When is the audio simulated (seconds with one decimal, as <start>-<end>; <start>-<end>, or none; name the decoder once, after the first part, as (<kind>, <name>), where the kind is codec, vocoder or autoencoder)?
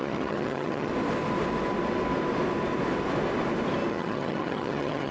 0.0-0.9 (vocoder, HiFi-GAN); 3.9-5.1